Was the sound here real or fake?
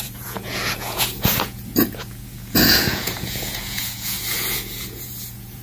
fake